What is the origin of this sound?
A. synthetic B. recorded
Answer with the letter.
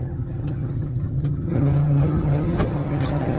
A